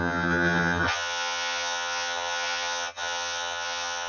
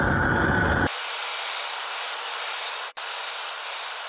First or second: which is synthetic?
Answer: first